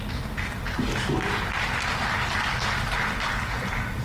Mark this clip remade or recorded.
recorded